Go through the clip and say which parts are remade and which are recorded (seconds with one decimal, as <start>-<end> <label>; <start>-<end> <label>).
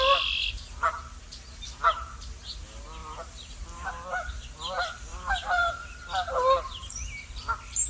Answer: 0.0-3.0 recorded; 3.0-3.9 remade; 3.9-5.1 recorded; 5.1-5.7 remade; 5.7-6.8 recorded; 6.8-7.4 remade; 7.4-7.9 recorded